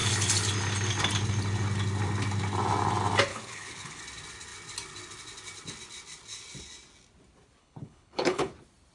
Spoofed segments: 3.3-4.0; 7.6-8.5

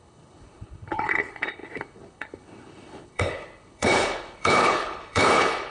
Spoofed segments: 0.0-5.7

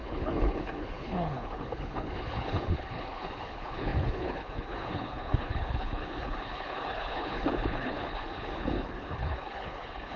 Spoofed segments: 0.0-10.2

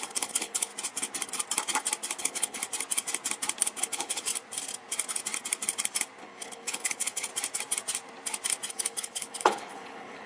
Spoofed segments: 0.0-0.7; 2.2-2.6; 3.8-4.3; 6.2-7.3; 8.7-10.3